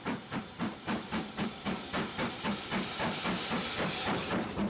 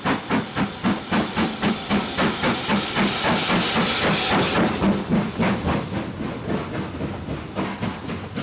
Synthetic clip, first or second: first